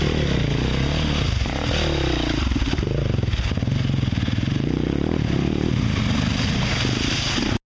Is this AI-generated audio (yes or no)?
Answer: no